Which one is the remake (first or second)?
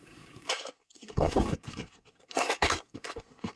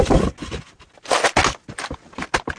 first